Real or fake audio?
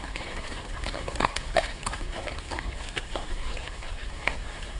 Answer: fake